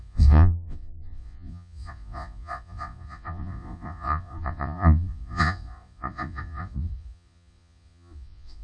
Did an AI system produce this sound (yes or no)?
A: yes